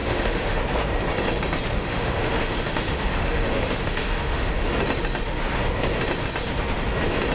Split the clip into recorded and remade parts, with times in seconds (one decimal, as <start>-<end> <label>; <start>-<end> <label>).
0.0-0.6 remade; 0.6-1.7 recorded; 1.7-4.7 remade; 4.7-7.3 recorded